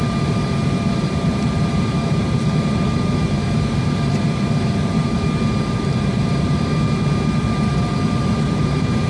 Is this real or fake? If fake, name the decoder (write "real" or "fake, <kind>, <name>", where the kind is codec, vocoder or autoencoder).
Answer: fake, vocoder, BigVGAN v2